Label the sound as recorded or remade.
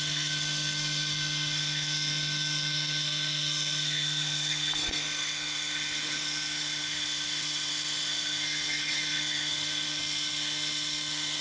remade